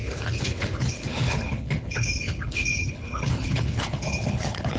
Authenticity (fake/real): fake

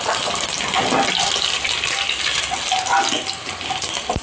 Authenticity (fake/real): real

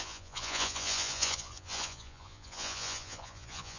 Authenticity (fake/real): fake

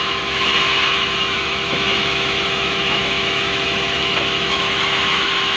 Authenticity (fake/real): fake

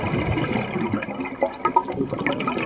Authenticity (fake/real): real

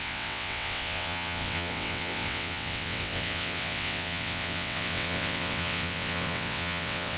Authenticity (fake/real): fake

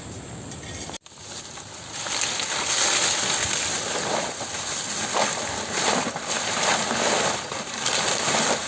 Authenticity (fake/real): real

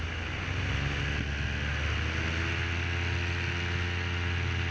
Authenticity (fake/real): real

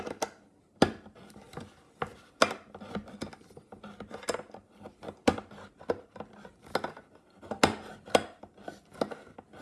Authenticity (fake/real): real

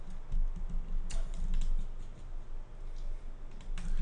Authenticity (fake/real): real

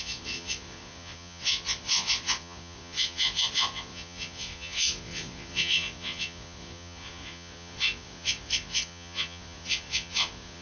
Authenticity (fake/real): fake